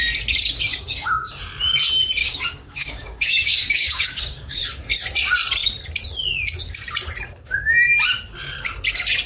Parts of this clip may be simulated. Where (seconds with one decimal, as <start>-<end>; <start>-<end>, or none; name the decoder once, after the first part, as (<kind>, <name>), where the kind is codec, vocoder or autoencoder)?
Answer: 0.7-1.4 (codec, DAC); 2.2-4.6